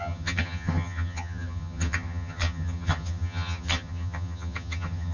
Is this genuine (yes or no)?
no